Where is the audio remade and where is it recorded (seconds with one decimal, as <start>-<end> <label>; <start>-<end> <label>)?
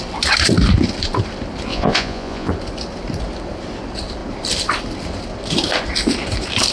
0.0-1.7 recorded; 1.7-2.5 remade; 2.5-6.7 recorded